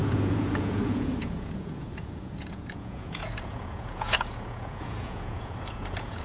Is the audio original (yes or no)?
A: no